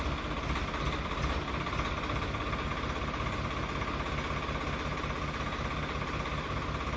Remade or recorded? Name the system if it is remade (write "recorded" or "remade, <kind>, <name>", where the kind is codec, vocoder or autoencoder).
recorded